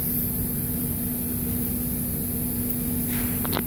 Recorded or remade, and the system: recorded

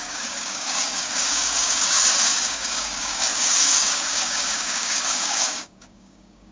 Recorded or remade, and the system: remade, codec, DAC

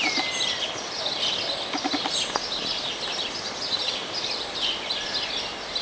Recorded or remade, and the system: recorded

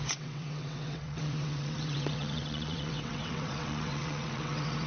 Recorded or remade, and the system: remade, vocoder, WaveNeXt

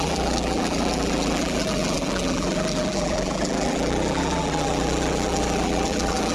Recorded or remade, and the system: remade, vocoder, BigVGAN v2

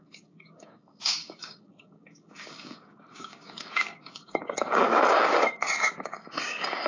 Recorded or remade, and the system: remade, codec, DAC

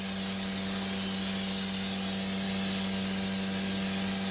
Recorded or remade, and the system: recorded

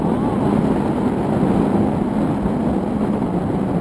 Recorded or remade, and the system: recorded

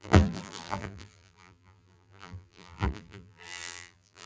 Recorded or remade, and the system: remade, vocoder, BigVGAN v2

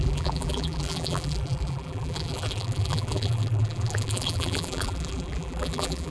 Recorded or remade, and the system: remade, vocoder, BigVGAN v2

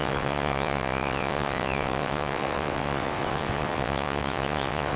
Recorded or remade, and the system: remade, vocoder, WaveNeXt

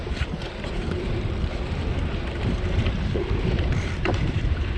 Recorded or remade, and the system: remade, vocoder, BigVGAN v2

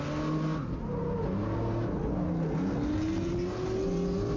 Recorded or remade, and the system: recorded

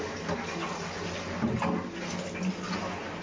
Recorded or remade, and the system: recorded